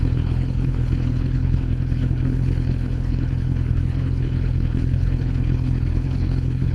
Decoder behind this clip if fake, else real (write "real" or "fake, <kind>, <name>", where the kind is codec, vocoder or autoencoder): fake, codec, HILCodec